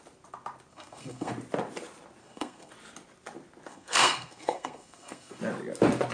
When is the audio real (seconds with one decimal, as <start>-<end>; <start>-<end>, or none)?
0.0-0.7; 1.3-2.2; 2.7-3.7; 5.4-6.1